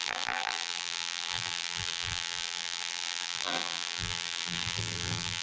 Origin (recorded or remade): remade